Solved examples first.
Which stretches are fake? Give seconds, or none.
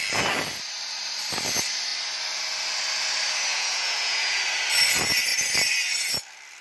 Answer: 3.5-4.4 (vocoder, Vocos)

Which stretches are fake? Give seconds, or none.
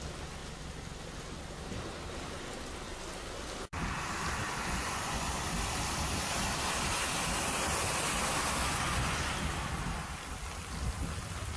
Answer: 4.6-5.3 (vocoder, Vocos); 8.6-9.3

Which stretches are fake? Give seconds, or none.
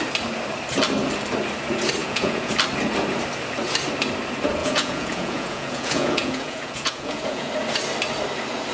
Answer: 2.0-2.5 (vocoder, Vocos); 4.6-7.5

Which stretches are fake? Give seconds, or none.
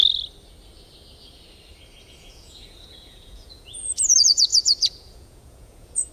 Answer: 2.1-6.1 (vocoder, Vocos)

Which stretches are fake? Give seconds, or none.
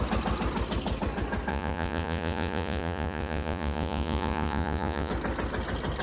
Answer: 1.5-5.1 (vocoder, Vocos)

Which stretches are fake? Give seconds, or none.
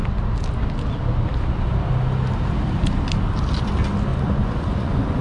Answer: 4.1-5.2 (vocoder, Vocos)